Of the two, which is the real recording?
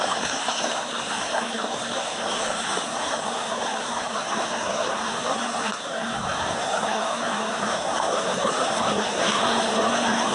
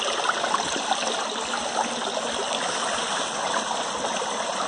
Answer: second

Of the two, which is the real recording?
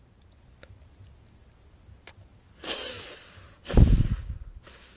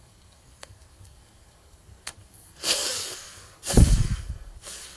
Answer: first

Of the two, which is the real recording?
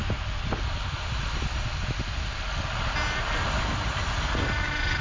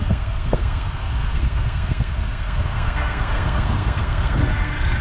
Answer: first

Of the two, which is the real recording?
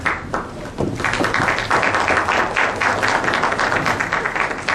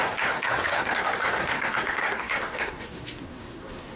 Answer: first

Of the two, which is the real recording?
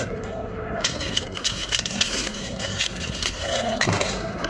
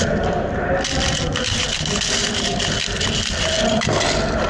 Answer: second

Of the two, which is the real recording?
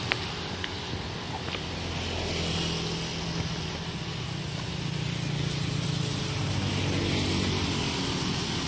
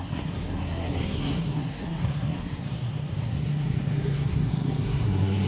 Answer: first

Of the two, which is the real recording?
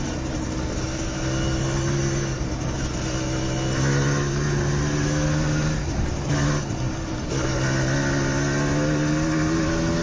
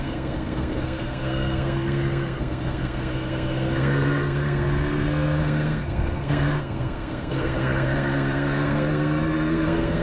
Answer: first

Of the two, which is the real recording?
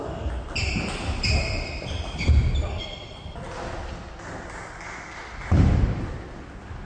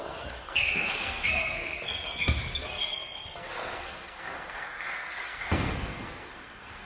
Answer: first